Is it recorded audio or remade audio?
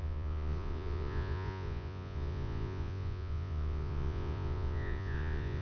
remade